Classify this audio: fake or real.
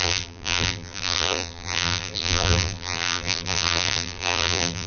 fake